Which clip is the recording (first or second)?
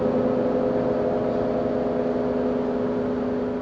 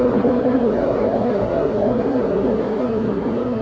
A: first